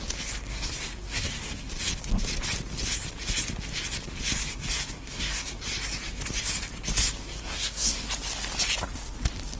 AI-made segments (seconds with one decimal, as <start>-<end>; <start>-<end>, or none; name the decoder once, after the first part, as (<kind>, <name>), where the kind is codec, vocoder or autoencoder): 0.5-1.7 (codec, SNAC); 4.4-5.6; 7.2-8.1